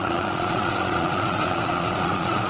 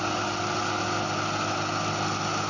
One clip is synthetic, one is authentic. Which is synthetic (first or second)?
first